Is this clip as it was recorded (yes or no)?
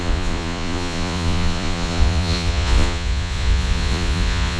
no